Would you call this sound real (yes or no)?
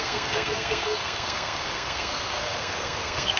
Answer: no